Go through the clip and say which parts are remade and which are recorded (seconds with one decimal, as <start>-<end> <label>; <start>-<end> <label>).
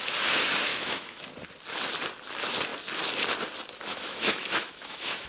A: 0.0-0.7 recorded; 0.7-1.2 remade; 1.2-3.9 recorded; 3.9-5.3 remade